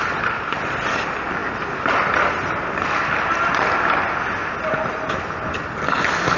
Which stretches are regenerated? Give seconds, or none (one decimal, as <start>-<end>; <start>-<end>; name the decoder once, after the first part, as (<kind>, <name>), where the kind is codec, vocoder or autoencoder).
none